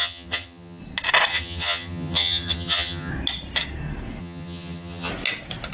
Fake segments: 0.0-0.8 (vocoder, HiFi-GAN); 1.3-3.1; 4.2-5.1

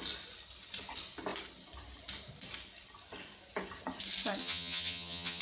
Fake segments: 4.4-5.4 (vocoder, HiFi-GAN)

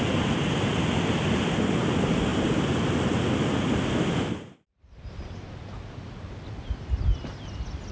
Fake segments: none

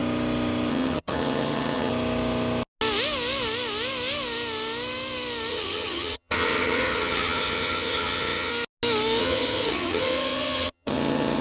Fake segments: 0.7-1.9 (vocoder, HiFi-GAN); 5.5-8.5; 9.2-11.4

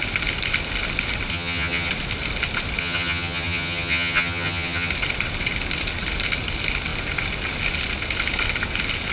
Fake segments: 1.3-1.9 (vocoder, HiFi-GAN); 2.8-4.9

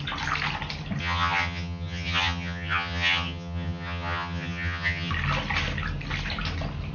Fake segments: 1.0-5.1 (vocoder, HiFi-GAN)

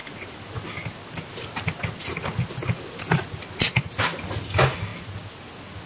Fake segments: none

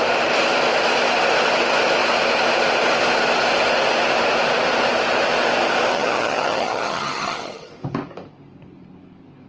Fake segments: 5.9-7.7 (vocoder, HiFi-GAN)